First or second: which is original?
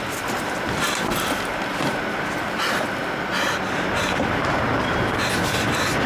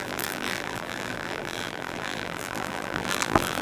first